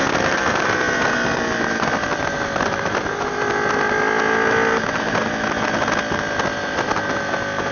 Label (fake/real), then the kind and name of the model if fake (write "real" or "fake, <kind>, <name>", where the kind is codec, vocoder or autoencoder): real